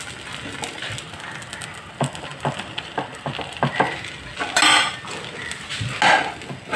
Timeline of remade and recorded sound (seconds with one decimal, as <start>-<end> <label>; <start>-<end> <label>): 0.0-2.3 recorded; 2.3-3.9 remade; 3.9-6.8 recorded